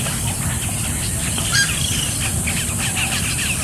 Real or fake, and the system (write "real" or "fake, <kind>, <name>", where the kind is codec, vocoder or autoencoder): real